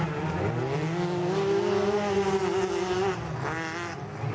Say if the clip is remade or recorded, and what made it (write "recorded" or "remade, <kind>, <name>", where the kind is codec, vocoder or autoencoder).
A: recorded